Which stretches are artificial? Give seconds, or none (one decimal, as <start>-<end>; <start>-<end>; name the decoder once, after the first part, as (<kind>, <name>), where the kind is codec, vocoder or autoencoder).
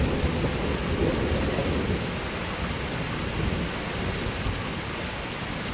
none